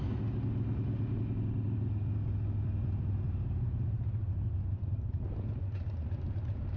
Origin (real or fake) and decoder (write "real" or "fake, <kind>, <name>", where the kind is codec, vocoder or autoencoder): real